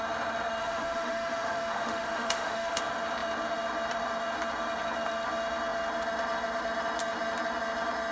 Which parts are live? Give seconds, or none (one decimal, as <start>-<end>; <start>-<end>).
0.0-0.6; 2.8-8.1